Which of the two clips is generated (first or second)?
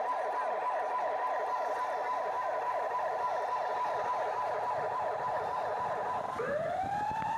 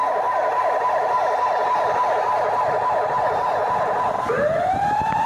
first